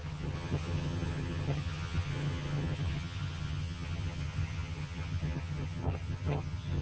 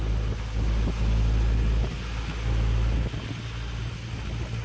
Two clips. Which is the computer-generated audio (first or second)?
first